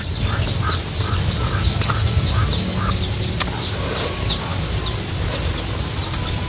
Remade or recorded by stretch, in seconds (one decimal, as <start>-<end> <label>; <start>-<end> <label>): 0.0-6.5 recorded